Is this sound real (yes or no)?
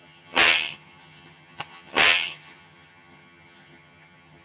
no